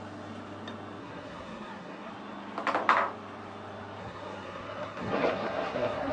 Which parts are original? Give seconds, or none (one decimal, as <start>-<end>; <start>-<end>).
0.0-1.0; 2.1-4.0